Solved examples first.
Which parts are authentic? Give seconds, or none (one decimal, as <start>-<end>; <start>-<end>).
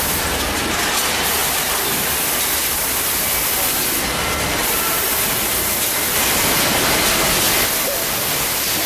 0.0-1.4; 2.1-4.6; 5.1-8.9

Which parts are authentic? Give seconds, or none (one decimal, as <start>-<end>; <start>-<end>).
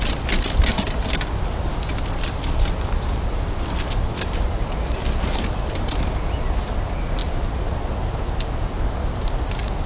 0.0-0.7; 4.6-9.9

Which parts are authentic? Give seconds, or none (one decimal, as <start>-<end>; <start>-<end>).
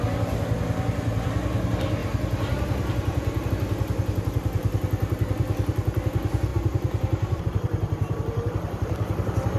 0.0-2.0; 3.5-6.5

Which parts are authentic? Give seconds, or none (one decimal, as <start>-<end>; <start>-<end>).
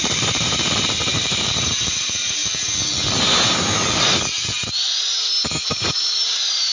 2.4-3.6; 4.8-5.7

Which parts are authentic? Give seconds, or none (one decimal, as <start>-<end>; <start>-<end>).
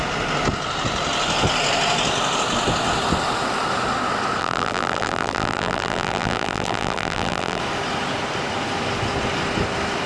0.0-4.4; 7.6-10.1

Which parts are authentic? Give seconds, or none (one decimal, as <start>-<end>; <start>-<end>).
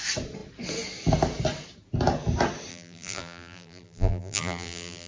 0.0-2.7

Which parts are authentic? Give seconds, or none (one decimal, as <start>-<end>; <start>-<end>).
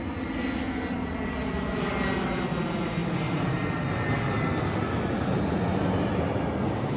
0.0-7.0